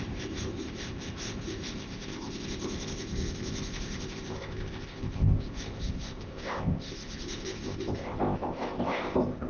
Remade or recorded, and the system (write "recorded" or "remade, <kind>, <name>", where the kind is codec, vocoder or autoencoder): remade, codec, ZipCodec